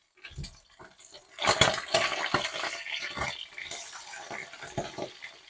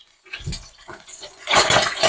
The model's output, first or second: second